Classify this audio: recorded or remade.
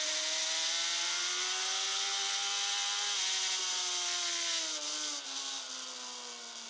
recorded